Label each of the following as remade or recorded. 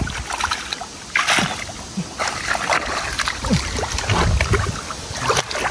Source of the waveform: recorded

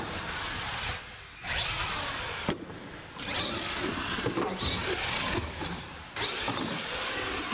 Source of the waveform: recorded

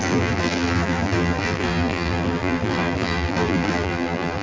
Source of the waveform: remade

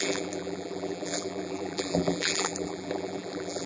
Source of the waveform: remade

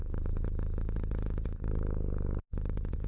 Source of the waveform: recorded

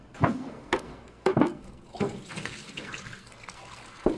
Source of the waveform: remade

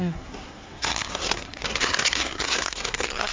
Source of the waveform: remade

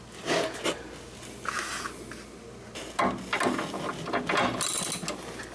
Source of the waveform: recorded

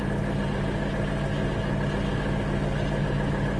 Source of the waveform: recorded